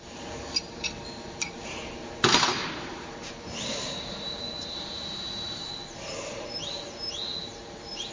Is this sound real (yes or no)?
no